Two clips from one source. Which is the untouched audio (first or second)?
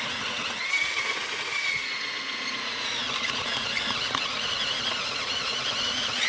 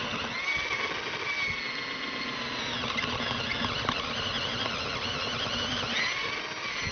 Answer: second